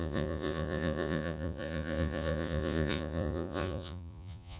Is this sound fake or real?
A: fake